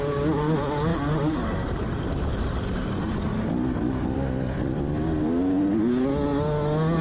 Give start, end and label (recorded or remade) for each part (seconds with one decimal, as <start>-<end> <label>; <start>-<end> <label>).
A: 0.0-7.0 recorded